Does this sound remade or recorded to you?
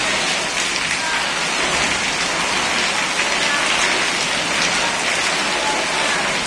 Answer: recorded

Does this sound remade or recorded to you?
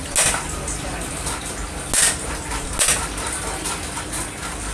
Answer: recorded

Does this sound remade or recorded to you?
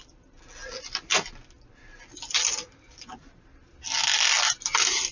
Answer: recorded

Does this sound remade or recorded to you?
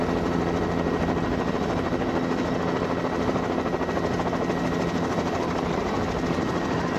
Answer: recorded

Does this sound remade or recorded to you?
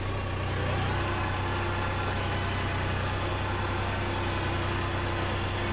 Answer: recorded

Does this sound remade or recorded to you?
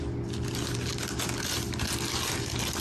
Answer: recorded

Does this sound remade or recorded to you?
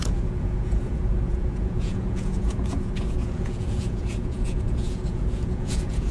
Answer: remade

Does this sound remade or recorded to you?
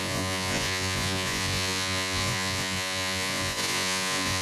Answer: remade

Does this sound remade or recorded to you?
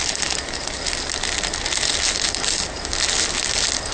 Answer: recorded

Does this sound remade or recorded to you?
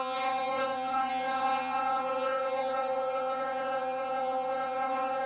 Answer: remade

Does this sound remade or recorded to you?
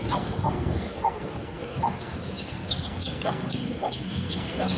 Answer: remade